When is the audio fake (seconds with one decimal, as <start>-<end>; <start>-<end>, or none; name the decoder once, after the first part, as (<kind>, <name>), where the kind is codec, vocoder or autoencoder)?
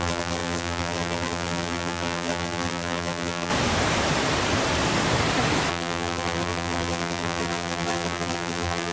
0.0-3.5 (vocoder, BigVGAN v2); 5.7-8.9